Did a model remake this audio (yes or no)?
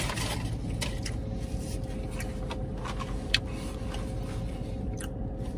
no